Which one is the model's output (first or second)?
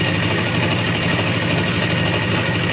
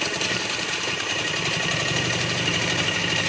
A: second